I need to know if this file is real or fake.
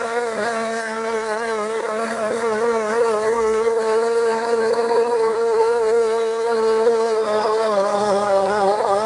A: fake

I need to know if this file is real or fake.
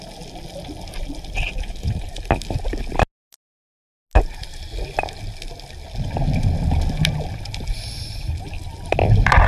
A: real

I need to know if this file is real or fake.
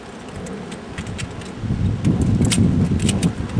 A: real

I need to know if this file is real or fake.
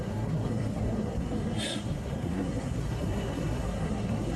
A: fake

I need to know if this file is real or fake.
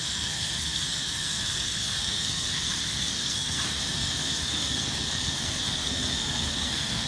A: fake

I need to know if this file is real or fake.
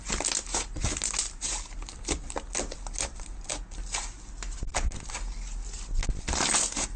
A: real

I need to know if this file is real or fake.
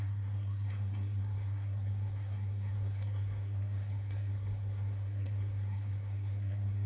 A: fake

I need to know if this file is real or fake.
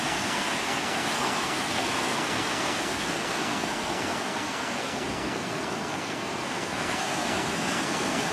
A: fake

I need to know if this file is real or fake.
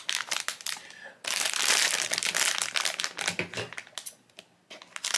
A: real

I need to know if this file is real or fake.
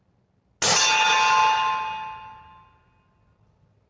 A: real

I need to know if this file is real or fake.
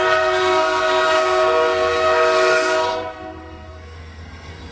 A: fake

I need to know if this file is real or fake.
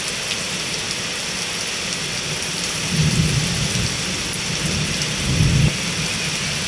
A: real